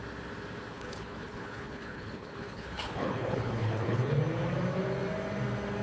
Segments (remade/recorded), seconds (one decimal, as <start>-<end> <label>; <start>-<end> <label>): 0.0-0.7 recorded; 0.7-4.2 remade; 4.2-5.8 recorded